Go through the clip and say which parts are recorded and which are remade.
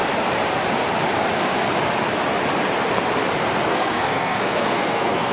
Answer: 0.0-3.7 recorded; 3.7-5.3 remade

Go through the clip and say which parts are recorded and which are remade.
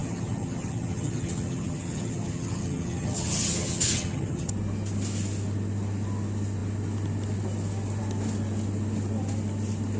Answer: 0.0-4.5 remade; 4.5-10.0 recorded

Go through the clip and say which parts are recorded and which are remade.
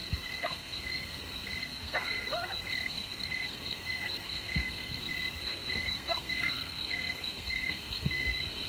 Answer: 0.0-8.7 remade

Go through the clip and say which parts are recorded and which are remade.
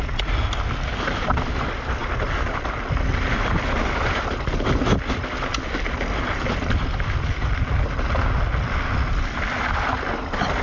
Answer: 0.0-10.6 recorded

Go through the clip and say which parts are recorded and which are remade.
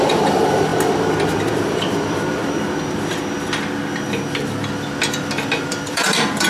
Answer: 0.0-0.7 remade; 0.7-1.5 recorded; 1.5-2.4 remade; 2.4-5.9 recorded; 5.9-6.5 remade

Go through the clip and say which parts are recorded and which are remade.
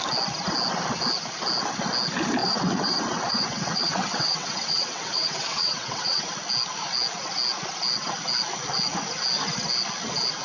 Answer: 0.0-2.4 recorded; 2.4-6.3 remade; 6.3-10.4 recorded